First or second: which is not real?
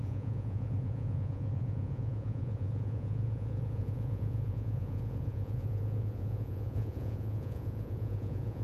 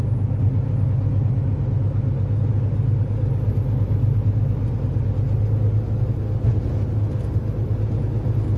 first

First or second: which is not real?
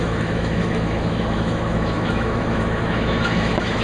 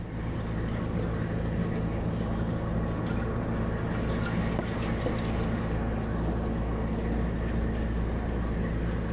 first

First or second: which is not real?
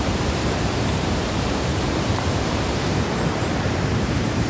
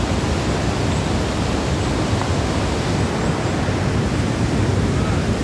first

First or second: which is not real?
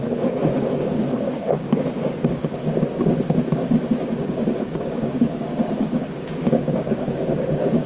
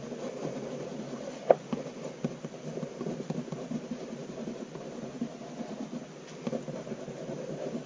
first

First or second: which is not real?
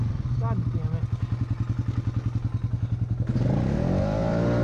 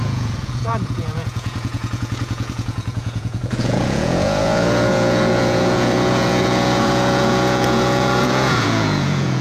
second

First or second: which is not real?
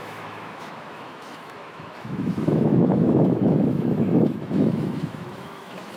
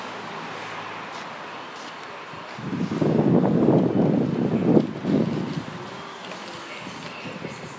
first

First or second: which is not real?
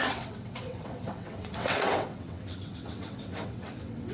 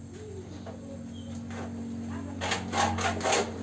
first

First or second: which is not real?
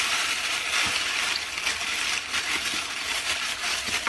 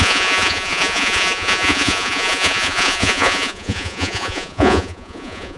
second